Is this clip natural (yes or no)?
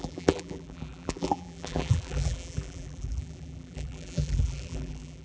no